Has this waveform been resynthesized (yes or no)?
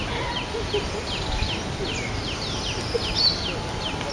no